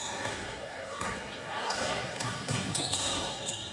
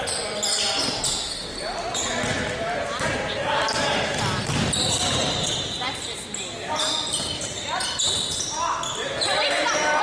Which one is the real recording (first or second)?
second